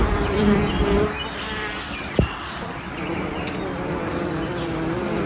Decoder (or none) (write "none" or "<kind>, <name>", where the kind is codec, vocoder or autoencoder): vocoder, BigVGAN v2